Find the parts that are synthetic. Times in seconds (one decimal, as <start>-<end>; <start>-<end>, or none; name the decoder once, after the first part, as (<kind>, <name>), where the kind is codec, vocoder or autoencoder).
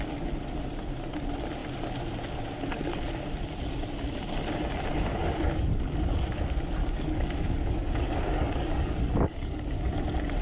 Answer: 4.9-5.7 (codec, DAC); 6.8-9.9